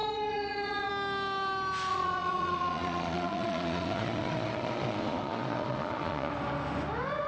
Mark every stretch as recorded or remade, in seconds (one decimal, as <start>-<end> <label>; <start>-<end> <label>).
0.0-0.9 remade; 0.9-1.9 recorded; 1.9-6.3 remade; 6.3-7.3 recorded